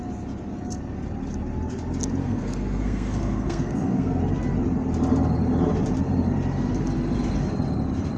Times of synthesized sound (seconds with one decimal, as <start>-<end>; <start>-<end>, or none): 2.2-4.2